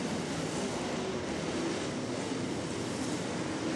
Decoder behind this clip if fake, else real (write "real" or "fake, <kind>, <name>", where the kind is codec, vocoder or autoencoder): real